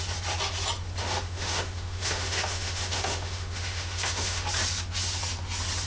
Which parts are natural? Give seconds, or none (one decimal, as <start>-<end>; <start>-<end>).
0.0-1.0; 4.5-5.9